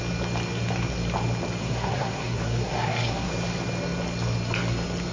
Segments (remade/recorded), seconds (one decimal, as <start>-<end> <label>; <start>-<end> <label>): 0.0-1.6 recorded; 1.6-3.3 remade; 3.3-5.1 recorded